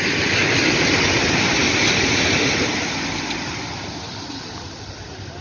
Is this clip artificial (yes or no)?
no